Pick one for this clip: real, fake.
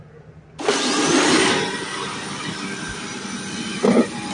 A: real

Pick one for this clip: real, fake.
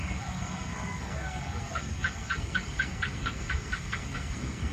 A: fake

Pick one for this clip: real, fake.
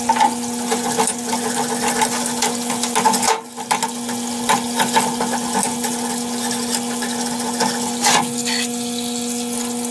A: real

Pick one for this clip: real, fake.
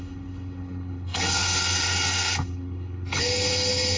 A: fake